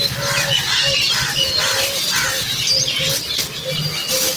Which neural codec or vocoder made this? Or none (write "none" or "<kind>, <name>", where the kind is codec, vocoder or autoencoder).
none